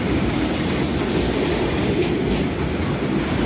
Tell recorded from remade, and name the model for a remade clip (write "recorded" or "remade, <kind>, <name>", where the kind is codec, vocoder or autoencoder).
recorded